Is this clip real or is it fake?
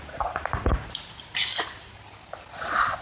real